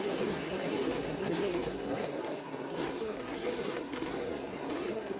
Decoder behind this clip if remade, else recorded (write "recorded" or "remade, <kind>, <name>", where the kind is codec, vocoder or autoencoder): remade, codec, SNAC